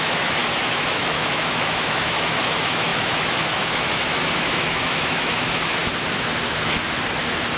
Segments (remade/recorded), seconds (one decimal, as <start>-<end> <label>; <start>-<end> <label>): 0.0-5.8 remade; 5.8-7.6 recorded